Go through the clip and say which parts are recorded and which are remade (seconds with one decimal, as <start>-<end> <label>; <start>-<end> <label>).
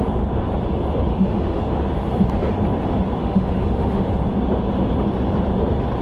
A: 0.0-1.1 recorded; 1.1-1.6 remade; 1.6-3.2 recorded; 3.2-4.1 remade; 4.1-6.0 recorded